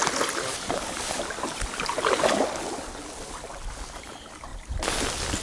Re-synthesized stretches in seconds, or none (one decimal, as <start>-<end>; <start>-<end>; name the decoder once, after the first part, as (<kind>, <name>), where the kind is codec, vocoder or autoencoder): none